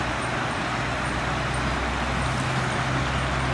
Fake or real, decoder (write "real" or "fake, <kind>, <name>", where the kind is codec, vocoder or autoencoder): real